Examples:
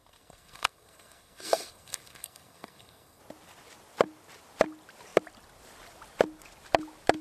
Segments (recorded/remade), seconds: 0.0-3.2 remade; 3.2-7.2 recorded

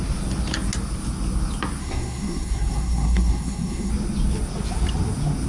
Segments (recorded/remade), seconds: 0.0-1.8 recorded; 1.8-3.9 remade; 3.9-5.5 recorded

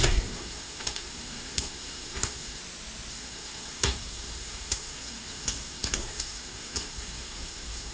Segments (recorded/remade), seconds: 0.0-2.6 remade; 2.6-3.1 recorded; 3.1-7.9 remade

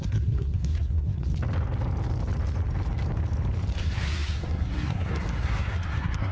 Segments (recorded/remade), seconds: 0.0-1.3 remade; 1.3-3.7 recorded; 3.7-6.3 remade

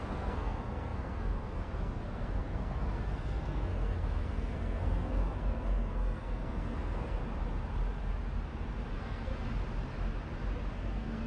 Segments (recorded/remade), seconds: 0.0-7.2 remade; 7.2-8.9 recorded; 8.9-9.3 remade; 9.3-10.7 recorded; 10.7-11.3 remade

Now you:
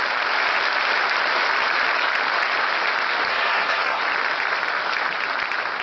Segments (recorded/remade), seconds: 0.0-3.3 recorded; 3.3-4.0 remade; 4.0-5.8 recorded

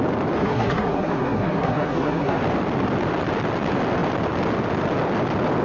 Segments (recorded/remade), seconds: 0.0-0.4 recorded; 0.4-2.4 remade; 2.4-5.6 recorded

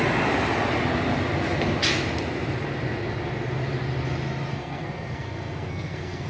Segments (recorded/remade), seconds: 0.0-4.5 recorded; 4.5-6.3 remade